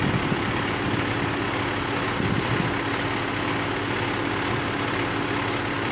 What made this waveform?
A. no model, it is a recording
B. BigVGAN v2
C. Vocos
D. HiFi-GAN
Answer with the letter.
A